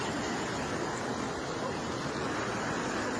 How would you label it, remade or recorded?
recorded